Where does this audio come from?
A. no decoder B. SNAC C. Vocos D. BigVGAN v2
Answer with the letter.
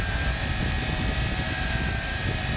A